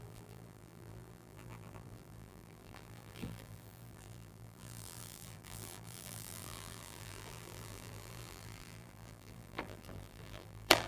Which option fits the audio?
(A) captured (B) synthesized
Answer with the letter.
B